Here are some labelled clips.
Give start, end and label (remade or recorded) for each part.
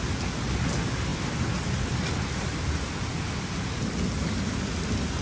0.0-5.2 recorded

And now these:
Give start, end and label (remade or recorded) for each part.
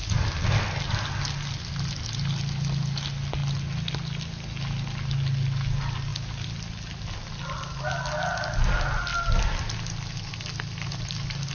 0.0-11.5 recorded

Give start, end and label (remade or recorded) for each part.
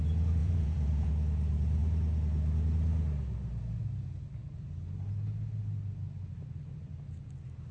0.0-0.4 recorded; 0.4-1.1 remade; 1.1-7.7 recorded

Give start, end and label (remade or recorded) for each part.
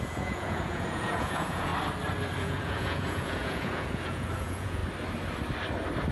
0.0-1.7 remade; 1.7-2.4 recorded; 2.4-4.8 remade; 4.8-6.1 recorded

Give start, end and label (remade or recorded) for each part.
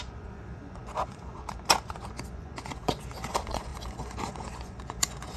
0.0-5.4 remade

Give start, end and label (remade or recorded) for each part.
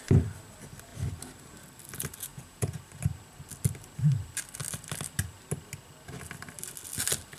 0.0-2.3 recorded; 2.3-2.8 remade; 2.8-7.4 recorded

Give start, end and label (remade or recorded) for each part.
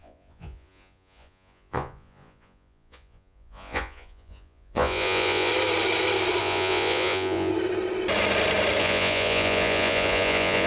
0.0-5.5 remade; 5.5-6.4 recorded; 6.4-7.5 remade; 7.5-8.8 recorded; 8.8-10.7 remade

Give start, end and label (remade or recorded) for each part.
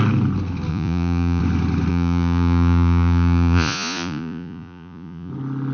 0.0-0.7 recorded; 0.7-1.4 remade; 1.4-1.9 recorded; 1.9-5.3 remade; 5.3-5.7 recorded